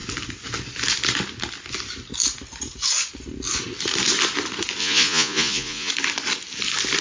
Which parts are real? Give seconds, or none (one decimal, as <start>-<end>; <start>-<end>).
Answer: 0.0-4.8; 5.9-7.0